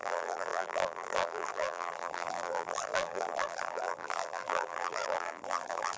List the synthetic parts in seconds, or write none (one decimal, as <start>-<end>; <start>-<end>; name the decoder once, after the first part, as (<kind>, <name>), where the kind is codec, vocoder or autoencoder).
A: 0.0-6.0 (vocoder, BigVGAN v2)